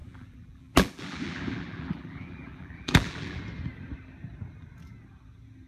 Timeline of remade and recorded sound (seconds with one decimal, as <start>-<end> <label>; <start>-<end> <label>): 0.0-3.4 remade; 3.4-5.7 recorded